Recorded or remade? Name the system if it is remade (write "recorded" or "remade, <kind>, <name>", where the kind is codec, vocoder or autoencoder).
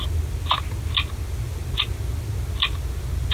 recorded